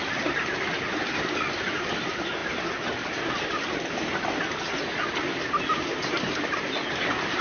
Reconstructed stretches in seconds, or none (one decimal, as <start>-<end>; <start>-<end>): none